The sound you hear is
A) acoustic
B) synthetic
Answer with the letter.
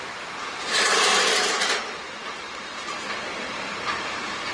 B